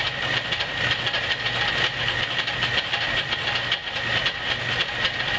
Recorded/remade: recorded